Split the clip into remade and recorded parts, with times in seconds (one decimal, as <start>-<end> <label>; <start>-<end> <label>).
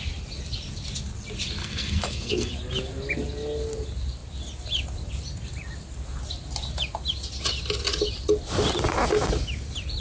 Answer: 0.0-1.6 recorded; 1.6-2.5 remade; 2.5-10.0 recorded